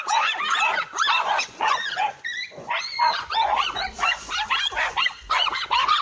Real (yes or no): no